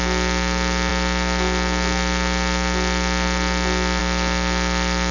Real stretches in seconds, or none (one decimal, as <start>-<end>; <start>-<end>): 0.0-5.1